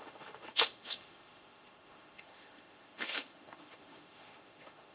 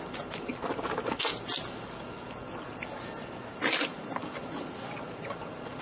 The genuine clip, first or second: second